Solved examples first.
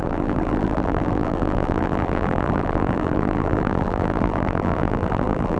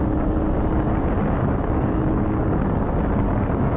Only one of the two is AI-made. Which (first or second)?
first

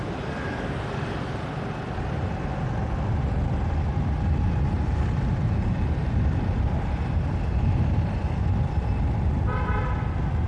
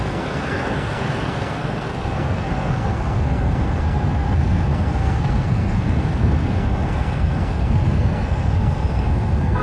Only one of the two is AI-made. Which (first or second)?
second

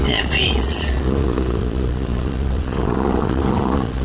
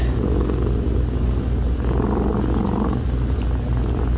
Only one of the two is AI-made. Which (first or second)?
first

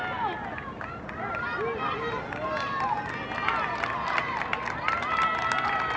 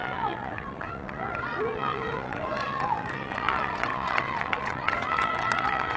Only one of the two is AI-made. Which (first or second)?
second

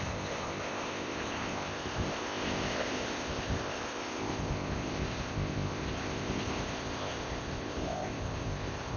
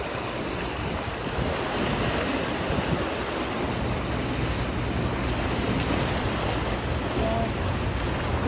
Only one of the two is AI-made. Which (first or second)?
first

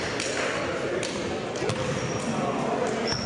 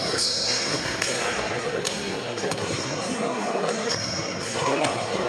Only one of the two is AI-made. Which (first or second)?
second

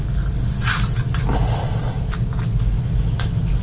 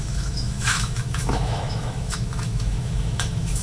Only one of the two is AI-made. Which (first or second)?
second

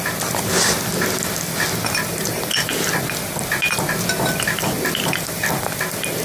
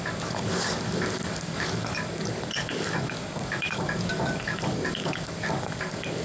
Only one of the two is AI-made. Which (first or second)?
second